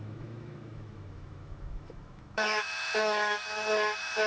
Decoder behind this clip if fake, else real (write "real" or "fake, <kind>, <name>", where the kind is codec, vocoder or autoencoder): fake, autoencoder, DAC-VAE